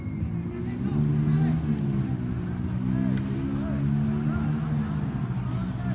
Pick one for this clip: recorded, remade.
recorded